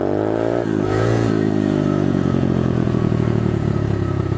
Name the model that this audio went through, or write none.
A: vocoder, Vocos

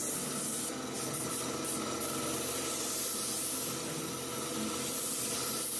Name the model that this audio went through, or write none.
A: none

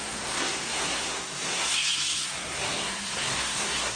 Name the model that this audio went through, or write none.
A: codec, SNAC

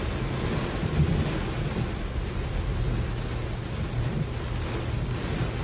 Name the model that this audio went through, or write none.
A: none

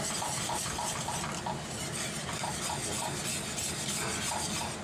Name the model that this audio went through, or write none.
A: none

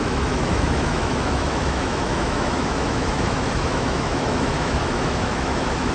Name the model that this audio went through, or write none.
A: autoencoder, DAC-VAE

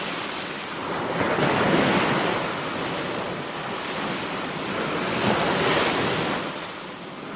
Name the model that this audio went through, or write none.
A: none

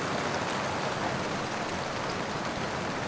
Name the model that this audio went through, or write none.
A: none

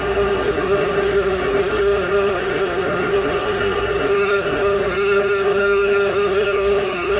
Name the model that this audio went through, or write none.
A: codec, SNAC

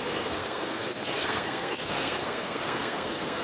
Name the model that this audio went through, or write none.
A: codec, SNAC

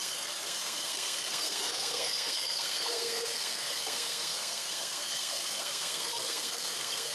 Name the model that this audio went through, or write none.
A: codec, SNAC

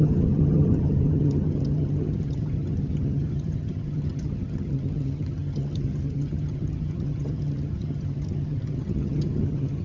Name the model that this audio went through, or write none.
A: vocoder, HiFi-GAN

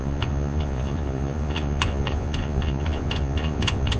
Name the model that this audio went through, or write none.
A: vocoder, Vocos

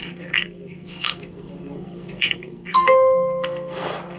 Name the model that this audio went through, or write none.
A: codec, SNAC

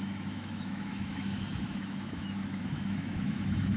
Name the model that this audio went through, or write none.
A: autoencoder, DAC-VAE